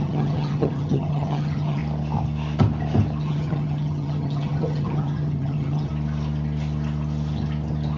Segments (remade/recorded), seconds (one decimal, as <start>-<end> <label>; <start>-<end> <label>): 0.0-1.8 remade; 1.8-3.2 recorded; 3.2-5.9 remade; 5.9-8.0 recorded